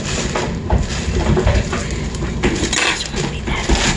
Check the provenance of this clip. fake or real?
real